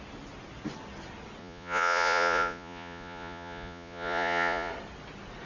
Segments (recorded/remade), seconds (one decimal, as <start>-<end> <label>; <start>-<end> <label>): 0.0-1.4 recorded; 1.4-4.7 remade; 4.7-5.5 recorded